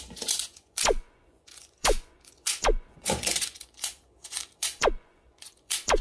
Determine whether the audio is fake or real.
fake